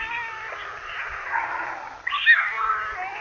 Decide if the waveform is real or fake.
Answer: real